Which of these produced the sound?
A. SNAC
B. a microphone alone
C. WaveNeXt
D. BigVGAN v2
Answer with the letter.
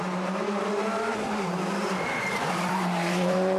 D